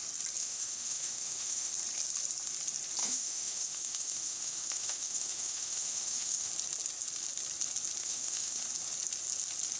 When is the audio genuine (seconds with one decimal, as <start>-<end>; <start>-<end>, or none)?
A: 0.0-0.4; 1.7-3.0; 6.5-8.0; 8.6-9.8